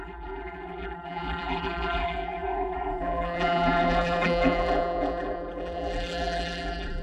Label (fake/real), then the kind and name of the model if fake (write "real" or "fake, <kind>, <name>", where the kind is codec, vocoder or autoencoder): fake, vocoder, BigVGAN v2